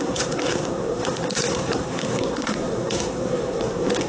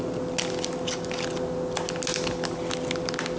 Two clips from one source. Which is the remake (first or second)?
first